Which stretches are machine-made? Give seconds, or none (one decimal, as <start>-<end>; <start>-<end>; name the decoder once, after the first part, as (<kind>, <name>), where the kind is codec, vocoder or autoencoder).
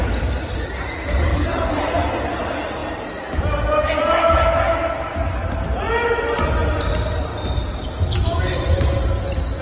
1.3-1.8 (codec, DAC)